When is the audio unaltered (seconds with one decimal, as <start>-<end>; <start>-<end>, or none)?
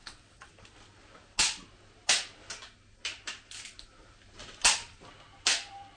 0.5-6.0